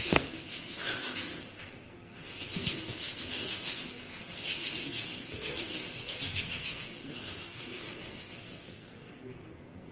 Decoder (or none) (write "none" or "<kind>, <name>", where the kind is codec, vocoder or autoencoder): codec, SNAC